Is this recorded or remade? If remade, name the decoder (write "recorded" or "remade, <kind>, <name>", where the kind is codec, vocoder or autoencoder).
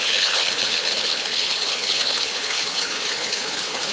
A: remade, codec, HILCodec